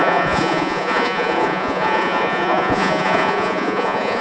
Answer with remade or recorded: remade